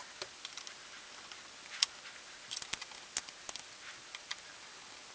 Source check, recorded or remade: recorded